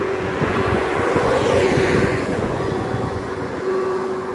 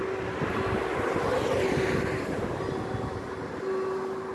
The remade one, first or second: first